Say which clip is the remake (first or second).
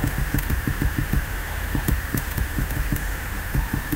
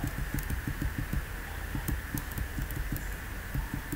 first